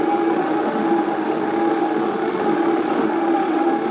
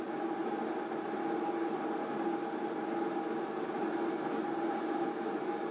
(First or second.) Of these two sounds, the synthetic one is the first